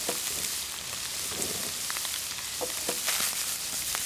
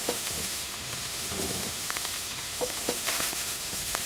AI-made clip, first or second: second